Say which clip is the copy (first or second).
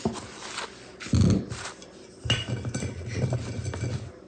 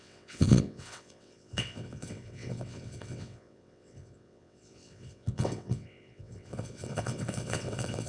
second